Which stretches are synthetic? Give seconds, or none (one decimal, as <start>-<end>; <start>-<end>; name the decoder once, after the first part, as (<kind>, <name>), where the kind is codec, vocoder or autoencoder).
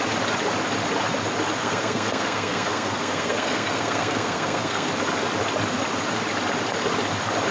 1.6-4.9 (codec, SNAC)